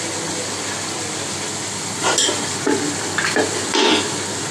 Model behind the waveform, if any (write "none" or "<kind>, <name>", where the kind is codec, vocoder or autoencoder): none